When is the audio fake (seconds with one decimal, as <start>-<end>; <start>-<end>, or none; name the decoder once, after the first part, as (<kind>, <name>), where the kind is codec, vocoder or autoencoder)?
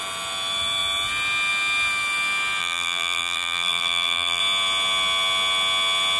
2.6-4.4 (vocoder, BigVGAN v2)